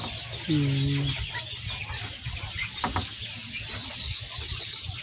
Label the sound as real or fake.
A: real